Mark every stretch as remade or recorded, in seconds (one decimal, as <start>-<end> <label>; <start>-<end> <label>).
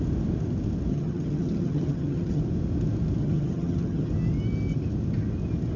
0.0-0.9 recorded; 0.9-2.4 remade; 2.4-3.2 recorded; 3.2-4.1 remade; 4.1-5.8 recorded